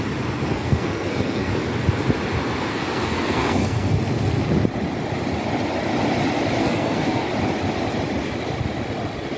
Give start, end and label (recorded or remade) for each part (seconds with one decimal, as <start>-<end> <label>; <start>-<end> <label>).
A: 0.0-0.5 recorded; 0.5-1.5 remade; 1.5-2.7 recorded; 2.7-4.0 remade; 4.0-6.6 recorded; 6.6-7.3 remade; 7.3-9.4 recorded